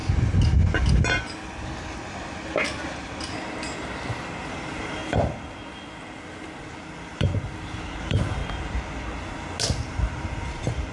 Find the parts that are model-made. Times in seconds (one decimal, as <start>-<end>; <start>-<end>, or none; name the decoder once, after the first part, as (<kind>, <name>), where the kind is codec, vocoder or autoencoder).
4.5-5.0 (vocoder, BigVGAN v2); 6.6-7.3; 8.0-8.4; 9.9-10.9